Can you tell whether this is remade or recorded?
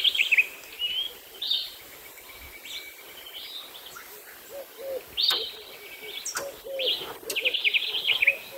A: recorded